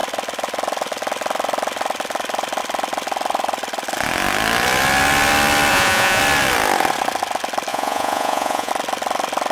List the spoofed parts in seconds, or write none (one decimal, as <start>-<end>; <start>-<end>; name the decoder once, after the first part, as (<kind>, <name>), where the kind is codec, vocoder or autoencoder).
5.7-6.2 (vocoder, Vocos); 7.7-8.7

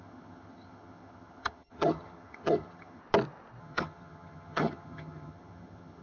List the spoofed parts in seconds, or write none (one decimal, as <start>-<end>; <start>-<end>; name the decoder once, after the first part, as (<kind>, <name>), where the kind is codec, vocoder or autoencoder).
0.0-3.0 (vocoder, HiFi-GAN); 3.6-6.0